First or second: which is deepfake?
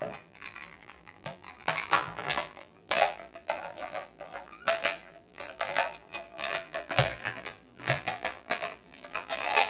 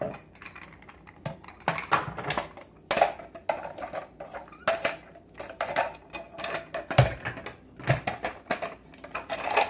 first